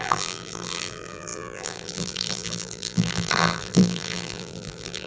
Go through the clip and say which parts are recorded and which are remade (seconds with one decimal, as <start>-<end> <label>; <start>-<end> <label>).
0.0-5.1 remade